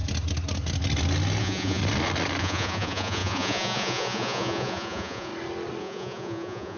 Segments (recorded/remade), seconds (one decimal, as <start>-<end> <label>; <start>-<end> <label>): 0.0-1.4 recorded; 1.4-1.8 remade; 1.8-2.4 recorded; 2.4-5.3 remade; 5.3-5.8 recorded; 5.8-6.8 remade

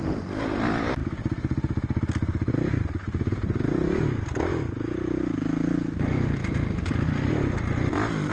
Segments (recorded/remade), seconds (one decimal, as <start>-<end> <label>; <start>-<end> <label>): 0.0-8.3 recorded

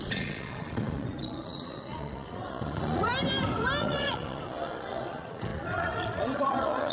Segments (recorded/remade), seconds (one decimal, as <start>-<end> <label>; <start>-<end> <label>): 0.0-3.1 remade; 3.1-3.8 recorded; 3.8-6.9 remade

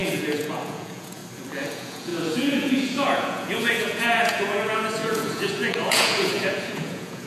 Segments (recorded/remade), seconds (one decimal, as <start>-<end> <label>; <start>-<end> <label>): 0.0-1.2 remade; 1.2-1.7 recorded; 1.7-7.3 remade

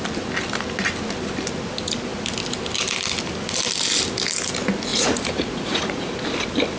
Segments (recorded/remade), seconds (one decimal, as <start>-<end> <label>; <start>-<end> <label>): 0.0-4.9 recorded; 4.9-6.2 remade; 6.2-6.8 recorded